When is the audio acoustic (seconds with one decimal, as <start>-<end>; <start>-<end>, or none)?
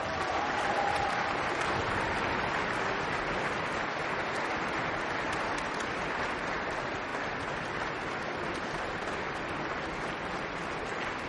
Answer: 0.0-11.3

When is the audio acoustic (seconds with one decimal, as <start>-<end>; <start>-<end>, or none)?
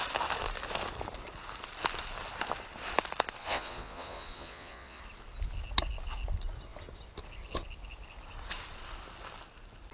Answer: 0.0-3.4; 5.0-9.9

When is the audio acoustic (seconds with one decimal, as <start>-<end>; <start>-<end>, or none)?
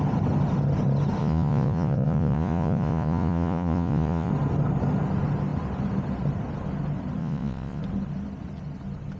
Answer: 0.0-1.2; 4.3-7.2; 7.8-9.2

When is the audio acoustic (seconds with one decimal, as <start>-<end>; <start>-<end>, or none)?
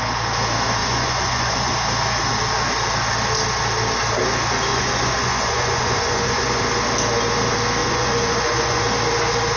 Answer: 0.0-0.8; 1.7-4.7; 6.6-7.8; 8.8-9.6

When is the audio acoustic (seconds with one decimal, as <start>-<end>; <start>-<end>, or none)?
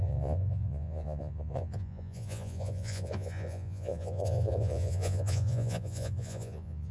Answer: none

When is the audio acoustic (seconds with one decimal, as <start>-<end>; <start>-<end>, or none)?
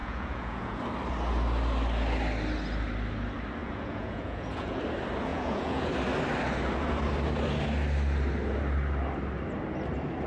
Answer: 0.8-3.6; 4.8-5.3; 5.9-10.3